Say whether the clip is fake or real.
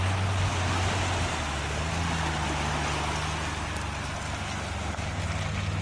real